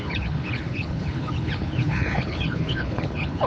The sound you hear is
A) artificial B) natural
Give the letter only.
A